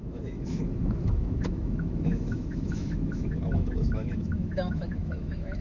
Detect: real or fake fake